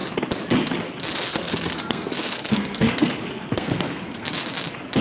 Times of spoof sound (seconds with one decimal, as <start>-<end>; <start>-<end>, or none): 1.3-4.3